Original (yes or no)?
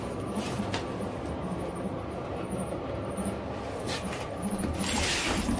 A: yes